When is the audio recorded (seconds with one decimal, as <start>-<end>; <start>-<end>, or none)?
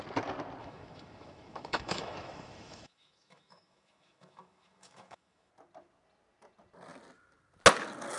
0.0-0.6; 5.5-8.2